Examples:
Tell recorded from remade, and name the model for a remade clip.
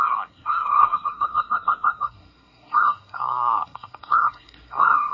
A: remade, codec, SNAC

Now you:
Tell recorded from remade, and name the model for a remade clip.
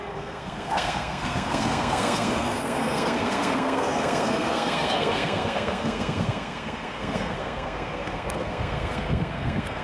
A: remade, codec, SNAC